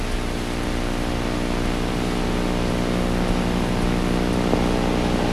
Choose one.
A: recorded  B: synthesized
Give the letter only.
A